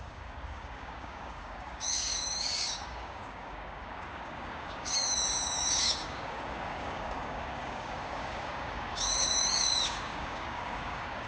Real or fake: fake